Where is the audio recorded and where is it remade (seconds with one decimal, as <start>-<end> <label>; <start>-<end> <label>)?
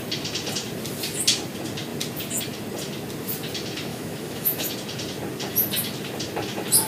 0.0-3.9 recorded; 3.9-4.7 remade; 4.7-6.9 recorded